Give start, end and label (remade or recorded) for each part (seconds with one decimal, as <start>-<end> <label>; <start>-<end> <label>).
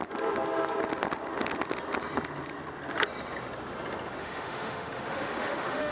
0.0-4.2 recorded; 4.2-5.9 remade